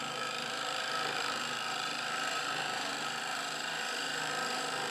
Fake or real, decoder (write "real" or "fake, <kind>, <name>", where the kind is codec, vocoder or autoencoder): fake, vocoder, BigVGAN v2